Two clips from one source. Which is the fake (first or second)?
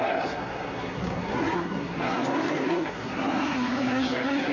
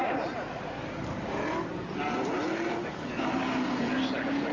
first